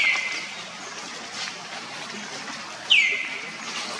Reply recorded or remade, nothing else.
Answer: recorded